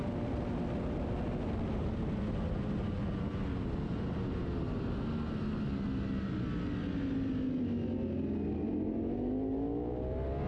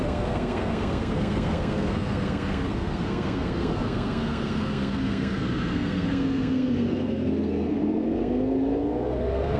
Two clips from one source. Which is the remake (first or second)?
second